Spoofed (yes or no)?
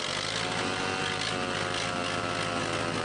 no